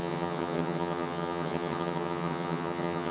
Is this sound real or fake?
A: fake